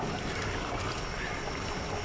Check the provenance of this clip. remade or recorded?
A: recorded